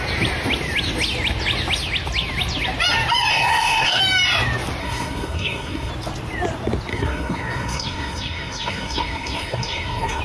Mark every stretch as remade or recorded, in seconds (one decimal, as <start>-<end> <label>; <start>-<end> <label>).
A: 0.0-3.3 recorded; 3.3-4.0 remade; 4.0-4.8 recorded; 4.8-5.9 remade; 5.9-6.9 recorded; 6.9-10.2 remade